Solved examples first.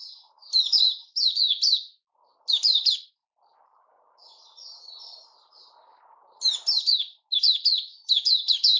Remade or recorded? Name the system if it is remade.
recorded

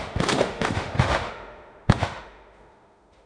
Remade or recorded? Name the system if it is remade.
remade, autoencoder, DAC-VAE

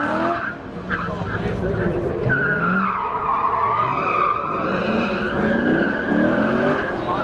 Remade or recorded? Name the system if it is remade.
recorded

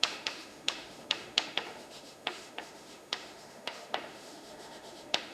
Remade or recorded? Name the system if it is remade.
remade, autoencoder, DAC-VAE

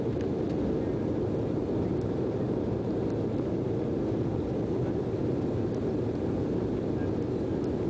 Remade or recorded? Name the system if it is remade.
recorded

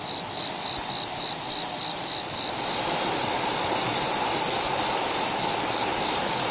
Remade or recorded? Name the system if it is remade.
recorded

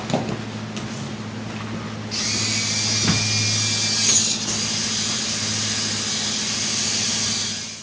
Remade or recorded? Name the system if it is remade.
recorded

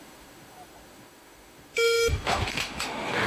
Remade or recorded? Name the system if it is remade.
remade, autoencoder, DAC-VAE